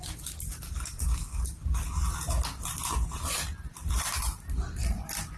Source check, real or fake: real